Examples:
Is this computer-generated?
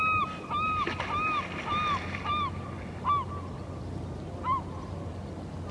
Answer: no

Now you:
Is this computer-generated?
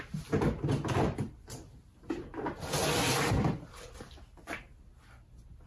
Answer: no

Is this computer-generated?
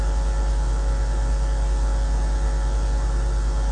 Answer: no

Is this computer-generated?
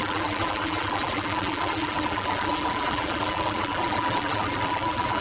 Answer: yes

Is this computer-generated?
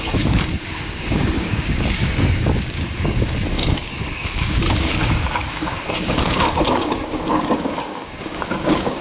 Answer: yes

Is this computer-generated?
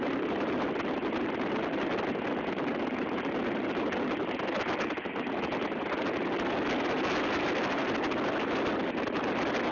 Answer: no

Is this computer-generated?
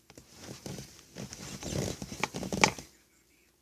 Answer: no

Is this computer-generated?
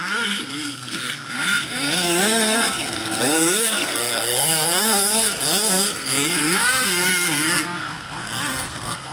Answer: yes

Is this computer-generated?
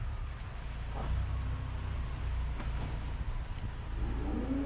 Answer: no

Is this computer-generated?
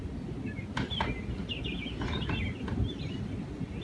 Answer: no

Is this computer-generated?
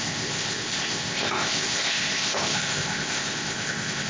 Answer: yes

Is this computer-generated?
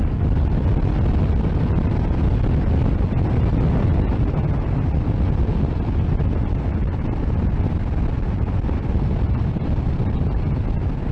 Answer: no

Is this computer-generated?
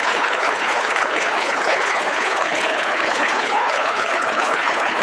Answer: yes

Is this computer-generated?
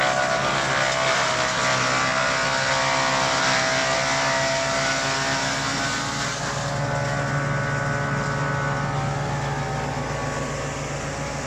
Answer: no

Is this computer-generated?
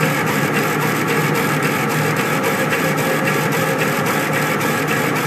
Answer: no